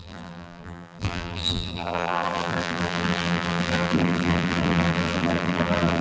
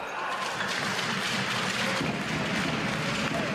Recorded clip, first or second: second